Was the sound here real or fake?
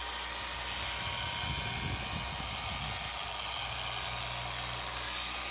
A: real